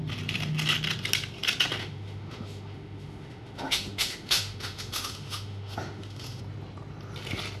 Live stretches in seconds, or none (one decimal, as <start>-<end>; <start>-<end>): 0.0-1.8; 6.4-7.6